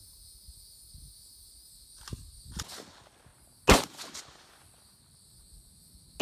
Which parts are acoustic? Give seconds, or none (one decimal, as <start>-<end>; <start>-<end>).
0.0-6.2